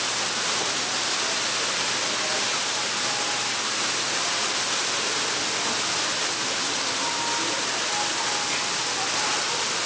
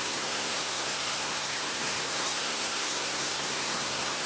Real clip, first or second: first